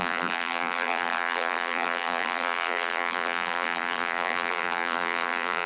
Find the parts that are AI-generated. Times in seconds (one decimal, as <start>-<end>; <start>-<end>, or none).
0.0-5.7